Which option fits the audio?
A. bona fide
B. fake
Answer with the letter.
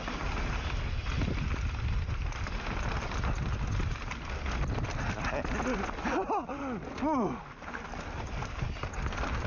A